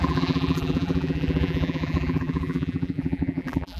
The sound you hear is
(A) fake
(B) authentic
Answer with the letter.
A